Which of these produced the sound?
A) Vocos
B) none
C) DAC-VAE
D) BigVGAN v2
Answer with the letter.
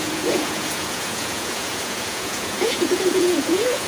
A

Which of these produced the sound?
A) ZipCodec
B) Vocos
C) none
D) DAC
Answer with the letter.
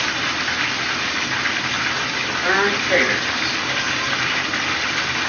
C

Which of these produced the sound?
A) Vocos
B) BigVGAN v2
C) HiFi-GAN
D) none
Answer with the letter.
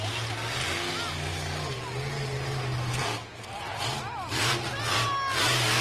D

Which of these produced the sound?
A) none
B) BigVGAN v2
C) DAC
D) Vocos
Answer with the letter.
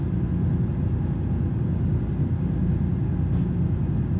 A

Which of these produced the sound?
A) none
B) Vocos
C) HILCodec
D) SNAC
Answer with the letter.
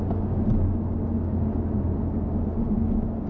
A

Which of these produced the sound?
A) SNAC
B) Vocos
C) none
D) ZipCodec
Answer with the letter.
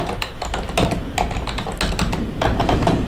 C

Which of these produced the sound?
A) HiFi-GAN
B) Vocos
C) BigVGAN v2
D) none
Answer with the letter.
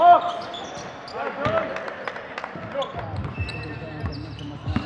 D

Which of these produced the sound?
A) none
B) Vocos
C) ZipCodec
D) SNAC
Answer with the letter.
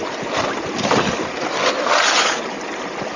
A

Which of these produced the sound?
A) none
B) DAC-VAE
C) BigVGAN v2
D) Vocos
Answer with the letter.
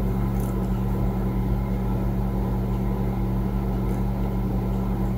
A